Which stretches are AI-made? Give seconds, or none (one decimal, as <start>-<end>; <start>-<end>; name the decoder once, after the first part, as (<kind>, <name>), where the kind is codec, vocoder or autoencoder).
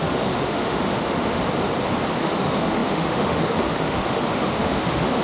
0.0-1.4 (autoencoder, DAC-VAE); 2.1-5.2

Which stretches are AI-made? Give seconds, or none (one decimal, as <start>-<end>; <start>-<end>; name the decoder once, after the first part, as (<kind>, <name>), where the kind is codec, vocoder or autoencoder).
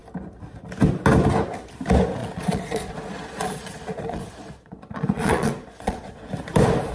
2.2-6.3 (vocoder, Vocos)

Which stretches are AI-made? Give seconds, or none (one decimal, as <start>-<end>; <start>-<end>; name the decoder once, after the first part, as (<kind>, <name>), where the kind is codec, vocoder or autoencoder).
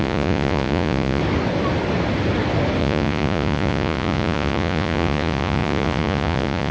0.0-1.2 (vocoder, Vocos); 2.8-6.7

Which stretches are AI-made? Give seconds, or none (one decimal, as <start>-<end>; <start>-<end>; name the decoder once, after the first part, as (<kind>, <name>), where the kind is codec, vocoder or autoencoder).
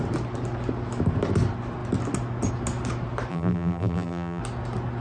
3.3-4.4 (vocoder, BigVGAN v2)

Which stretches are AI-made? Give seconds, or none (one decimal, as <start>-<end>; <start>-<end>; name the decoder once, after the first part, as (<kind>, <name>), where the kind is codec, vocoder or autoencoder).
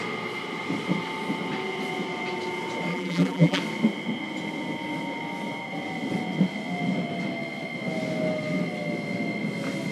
2.9-3.6 (vocoder, BigVGAN v2)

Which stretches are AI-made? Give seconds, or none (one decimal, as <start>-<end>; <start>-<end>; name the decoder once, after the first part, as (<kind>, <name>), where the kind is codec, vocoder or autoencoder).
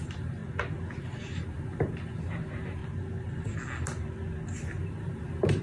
0.0-0.4 (vocoder, BigVGAN v2); 1.0-2.8; 4.5-5.6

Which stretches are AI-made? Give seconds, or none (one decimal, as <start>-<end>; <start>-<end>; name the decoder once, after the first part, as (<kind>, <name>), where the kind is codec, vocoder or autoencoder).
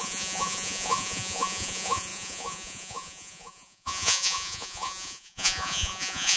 0.0-6.4 (vocoder, Vocos)